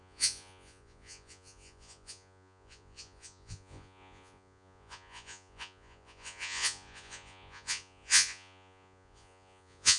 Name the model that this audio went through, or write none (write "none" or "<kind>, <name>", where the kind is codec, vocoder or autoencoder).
vocoder, Vocos